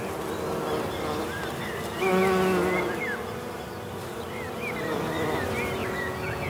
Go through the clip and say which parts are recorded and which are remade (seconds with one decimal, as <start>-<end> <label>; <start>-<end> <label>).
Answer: 0.0-5.8 recorded; 5.8-6.5 remade